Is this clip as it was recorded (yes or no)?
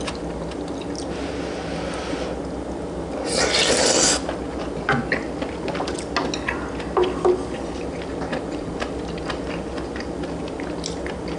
yes